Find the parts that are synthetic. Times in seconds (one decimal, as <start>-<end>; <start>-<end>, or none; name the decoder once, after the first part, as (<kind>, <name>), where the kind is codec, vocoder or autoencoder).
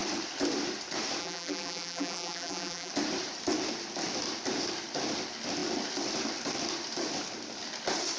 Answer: 1.2-2.9 (vocoder, BigVGAN v2)